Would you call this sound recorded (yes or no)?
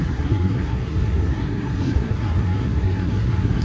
no